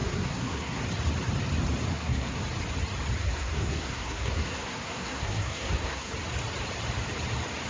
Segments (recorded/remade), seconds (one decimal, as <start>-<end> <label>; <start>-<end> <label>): 0.0-0.8 remade; 0.8-1.9 recorded; 1.9-2.4 remade; 2.4-3.2 recorded; 3.2-6.1 remade; 6.1-7.7 recorded